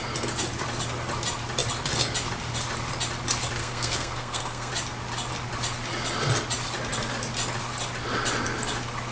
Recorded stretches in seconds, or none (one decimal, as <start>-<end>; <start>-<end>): 0.0-3.6; 4.7-9.1